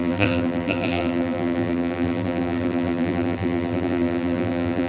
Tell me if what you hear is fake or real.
fake